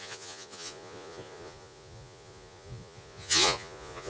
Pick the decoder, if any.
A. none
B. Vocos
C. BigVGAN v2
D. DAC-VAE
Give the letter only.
B